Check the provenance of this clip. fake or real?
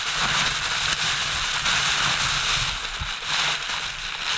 real